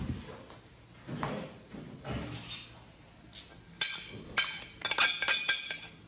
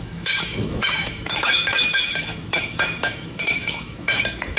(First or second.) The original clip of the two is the first